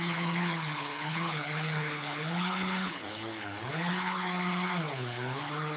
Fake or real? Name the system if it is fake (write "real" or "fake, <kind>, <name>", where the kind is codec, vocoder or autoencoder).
fake, codec, HILCodec